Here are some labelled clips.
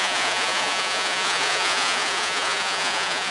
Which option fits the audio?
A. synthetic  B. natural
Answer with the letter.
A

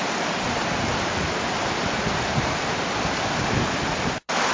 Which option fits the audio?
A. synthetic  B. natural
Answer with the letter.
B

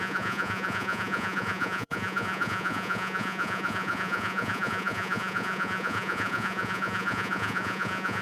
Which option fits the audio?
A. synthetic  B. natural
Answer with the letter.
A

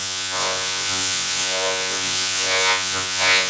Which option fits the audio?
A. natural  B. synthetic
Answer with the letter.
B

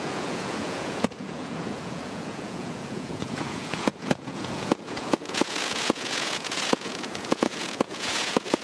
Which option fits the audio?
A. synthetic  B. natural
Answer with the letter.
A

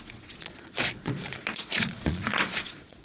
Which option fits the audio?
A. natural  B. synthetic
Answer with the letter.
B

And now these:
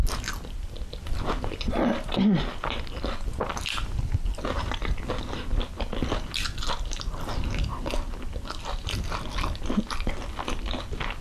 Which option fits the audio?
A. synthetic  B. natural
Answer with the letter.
B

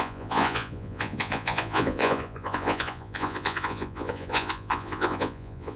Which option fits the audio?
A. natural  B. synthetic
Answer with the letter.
B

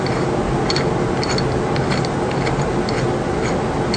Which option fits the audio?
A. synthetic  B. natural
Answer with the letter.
B